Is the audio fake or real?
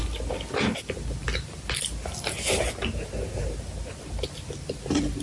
real